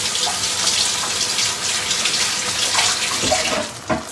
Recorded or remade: recorded